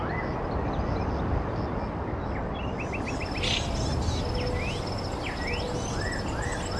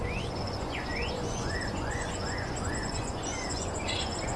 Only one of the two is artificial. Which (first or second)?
second